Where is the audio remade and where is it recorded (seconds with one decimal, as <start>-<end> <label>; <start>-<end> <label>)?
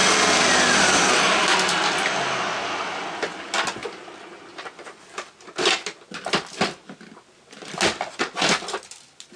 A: 0.0-9.4 recorded